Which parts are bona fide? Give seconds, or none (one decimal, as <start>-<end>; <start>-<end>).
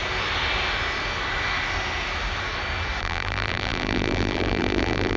0.0-3.0